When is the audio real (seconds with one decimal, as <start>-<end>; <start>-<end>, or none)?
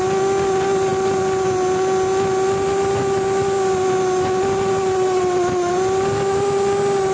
0.0-7.1